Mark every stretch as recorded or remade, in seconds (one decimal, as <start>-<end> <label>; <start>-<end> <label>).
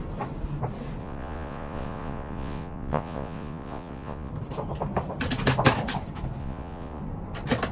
0.0-1.0 recorded; 1.0-4.3 remade; 4.3-6.4 recorded; 6.4-7.0 remade; 7.0-7.7 recorded